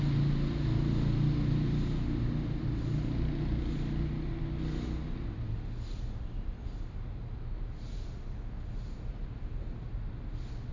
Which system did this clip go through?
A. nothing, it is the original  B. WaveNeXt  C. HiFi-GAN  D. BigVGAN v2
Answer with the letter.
A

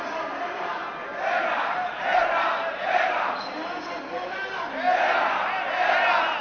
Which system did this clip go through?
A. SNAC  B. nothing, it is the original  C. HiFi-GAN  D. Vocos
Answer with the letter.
B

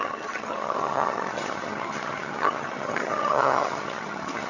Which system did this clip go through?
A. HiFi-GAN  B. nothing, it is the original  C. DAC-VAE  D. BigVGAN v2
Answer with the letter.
A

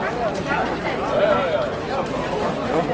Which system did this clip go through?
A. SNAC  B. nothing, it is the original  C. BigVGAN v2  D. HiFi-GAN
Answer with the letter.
B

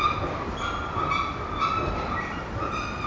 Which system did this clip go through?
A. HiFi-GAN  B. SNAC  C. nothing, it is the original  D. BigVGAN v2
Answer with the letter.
C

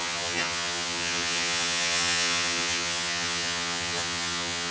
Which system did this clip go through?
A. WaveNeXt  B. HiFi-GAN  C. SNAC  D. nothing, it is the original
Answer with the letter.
B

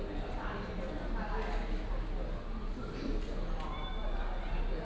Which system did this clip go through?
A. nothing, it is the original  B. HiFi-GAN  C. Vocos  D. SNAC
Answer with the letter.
A